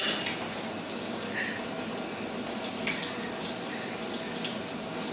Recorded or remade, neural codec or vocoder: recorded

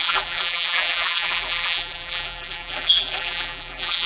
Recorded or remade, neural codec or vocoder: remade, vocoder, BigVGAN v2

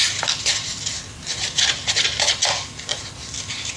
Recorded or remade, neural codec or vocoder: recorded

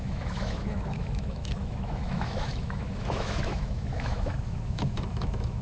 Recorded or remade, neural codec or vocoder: remade, autoencoder, DAC-VAE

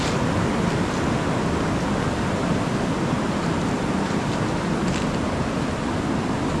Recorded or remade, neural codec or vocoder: recorded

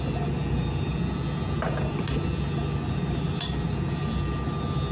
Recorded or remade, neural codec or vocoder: recorded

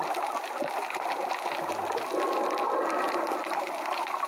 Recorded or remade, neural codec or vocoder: recorded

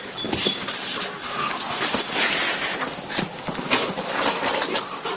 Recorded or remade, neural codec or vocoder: recorded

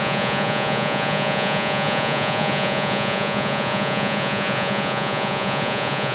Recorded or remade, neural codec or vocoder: remade, vocoder, Vocos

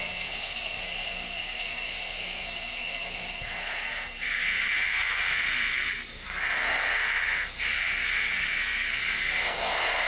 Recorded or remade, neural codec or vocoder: remade, codec, SNAC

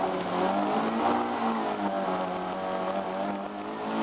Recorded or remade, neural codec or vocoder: recorded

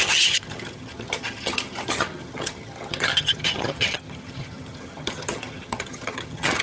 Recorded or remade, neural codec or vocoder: remade, vocoder, HiFi-GAN